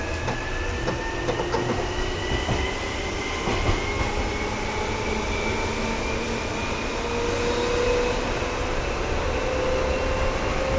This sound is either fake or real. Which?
real